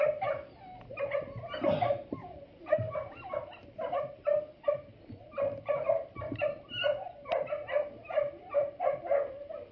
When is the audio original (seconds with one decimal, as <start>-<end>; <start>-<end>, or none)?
0.0-2.2; 3.3-4.3; 5.6-8.0; 8.8-9.7